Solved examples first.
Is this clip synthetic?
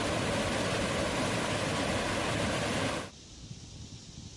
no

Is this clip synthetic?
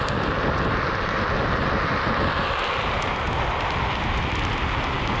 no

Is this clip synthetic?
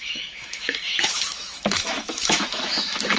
yes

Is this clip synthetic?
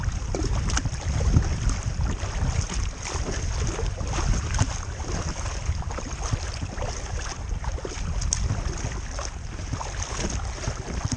no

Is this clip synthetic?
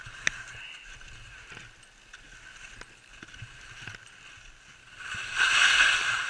no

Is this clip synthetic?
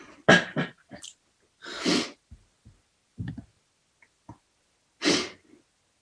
no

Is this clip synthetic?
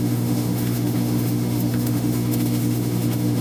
yes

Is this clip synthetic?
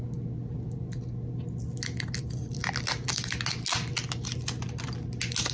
no